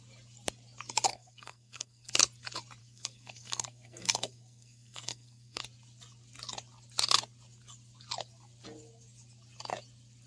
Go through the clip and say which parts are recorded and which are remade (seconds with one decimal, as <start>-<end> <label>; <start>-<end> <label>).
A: 0.0-1.1 recorded; 1.1-2.1 remade; 2.1-2.8 recorded; 2.8-5.6 remade; 5.6-10.3 recorded